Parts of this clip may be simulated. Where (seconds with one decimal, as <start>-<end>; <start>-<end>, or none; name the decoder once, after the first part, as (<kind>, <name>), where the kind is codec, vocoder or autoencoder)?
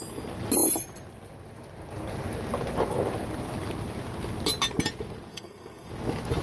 5.3-5.9 (codec, SNAC)